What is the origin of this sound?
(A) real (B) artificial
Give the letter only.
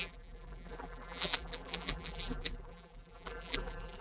B